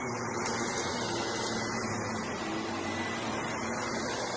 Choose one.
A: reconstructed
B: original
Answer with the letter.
B